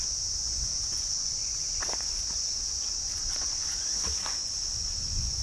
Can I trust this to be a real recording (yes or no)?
no